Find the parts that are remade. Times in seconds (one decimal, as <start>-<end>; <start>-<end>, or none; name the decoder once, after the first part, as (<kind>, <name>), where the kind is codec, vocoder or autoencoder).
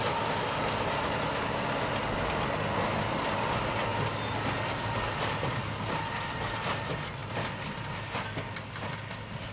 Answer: none